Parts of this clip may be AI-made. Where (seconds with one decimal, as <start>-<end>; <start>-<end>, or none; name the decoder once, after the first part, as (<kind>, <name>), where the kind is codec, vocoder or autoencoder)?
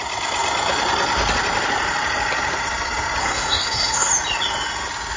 3.2-4.1 (codec, SNAC)